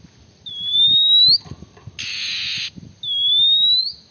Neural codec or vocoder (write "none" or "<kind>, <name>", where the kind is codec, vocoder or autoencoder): none